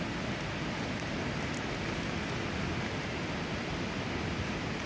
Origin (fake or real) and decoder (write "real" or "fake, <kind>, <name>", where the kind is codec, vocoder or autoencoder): real